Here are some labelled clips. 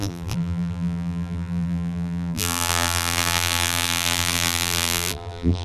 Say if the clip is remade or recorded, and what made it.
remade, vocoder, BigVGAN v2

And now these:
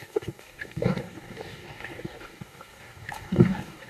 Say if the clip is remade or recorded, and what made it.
remade, codec, DAC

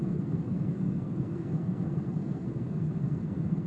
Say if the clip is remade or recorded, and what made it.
remade, codec, SNAC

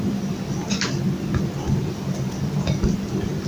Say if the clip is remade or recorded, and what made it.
recorded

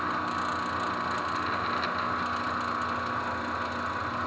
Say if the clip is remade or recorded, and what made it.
recorded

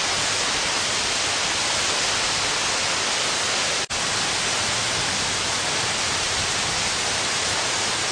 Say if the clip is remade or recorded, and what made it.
recorded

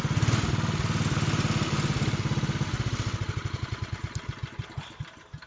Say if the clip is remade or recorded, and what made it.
recorded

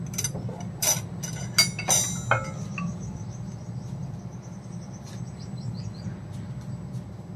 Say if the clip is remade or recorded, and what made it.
recorded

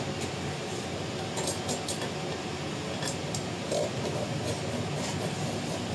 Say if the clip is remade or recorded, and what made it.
recorded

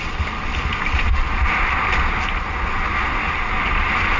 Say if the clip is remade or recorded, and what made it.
recorded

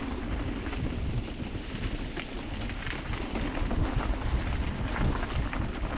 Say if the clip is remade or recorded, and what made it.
recorded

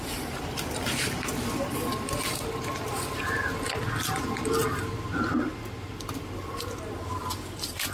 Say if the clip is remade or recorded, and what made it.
remade, vocoder, BigVGAN v2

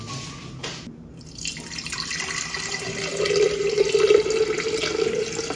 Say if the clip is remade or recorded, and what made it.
recorded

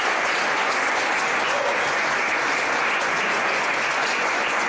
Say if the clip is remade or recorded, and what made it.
remade, vocoder, Vocos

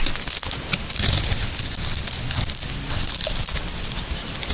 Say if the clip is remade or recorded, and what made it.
recorded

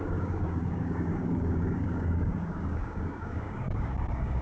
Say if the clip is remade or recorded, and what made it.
remade, codec, DAC